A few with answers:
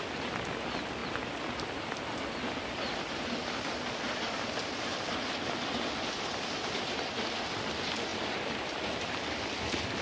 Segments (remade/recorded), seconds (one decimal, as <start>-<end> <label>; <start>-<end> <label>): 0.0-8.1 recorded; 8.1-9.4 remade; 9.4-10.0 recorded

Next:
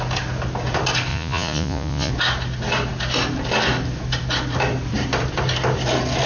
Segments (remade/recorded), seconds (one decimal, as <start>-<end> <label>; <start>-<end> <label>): 0.0-1.1 recorded; 1.1-2.1 remade; 2.1-6.3 recorded

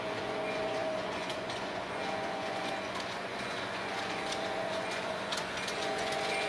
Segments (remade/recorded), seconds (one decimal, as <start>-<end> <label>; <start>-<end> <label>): 0.0-6.5 remade

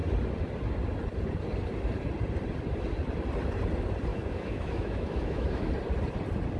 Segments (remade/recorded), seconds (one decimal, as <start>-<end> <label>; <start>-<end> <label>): 0.0-4.1 recorded; 4.1-5.7 remade; 5.7-6.6 recorded